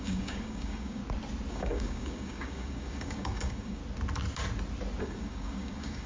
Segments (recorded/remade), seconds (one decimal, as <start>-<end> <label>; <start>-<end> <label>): 0.0-1.0 remade; 1.0-1.5 recorded; 1.5-3.8 remade; 3.8-5.0 recorded; 5.0-6.1 remade